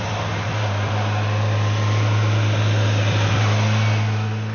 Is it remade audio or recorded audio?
recorded